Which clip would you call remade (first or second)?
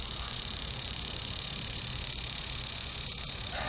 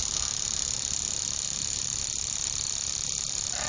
first